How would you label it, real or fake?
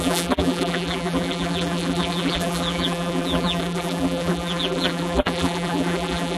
fake